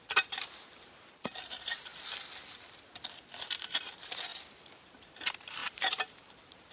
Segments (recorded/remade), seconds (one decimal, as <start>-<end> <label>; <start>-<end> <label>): 0.0-1.9 remade; 1.9-3.3 recorded; 3.3-4.3 remade; 4.3-4.9 recorded; 4.9-6.7 remade